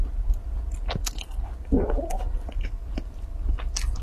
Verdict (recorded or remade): recorded